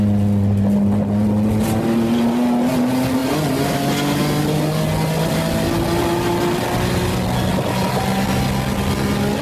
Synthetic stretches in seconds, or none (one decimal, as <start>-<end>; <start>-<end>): none